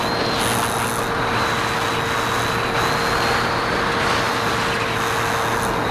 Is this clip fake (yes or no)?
no